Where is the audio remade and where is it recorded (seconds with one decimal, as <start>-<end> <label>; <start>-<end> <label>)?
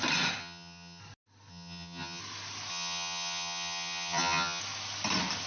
0.0-0.4 recorded; 0.4-1.0 remade; 1.0-1.5 recorded; 1.5-2.2 remade; 2.2-2.7 recorded; 2.7-4.6 remade; 4.6-5.5 recorded